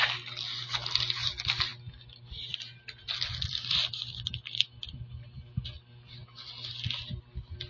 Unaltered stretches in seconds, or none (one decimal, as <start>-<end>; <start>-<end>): 0.0-7.7